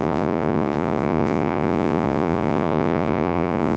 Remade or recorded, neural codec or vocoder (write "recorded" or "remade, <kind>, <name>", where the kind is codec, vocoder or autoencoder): remade, vocoder, Vocos